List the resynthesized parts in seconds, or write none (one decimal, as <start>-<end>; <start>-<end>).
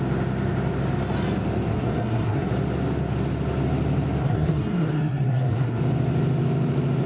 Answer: 1.7-2.5; 4.2-5.8